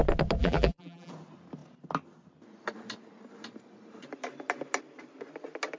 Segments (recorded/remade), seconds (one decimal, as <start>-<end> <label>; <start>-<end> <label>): 0.0-0.4 recorded; 0.4-1.1 remade; 1.1-5.8 recorded